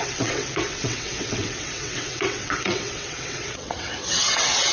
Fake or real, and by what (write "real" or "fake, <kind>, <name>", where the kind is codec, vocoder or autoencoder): fake, vocoder, WaveNeXt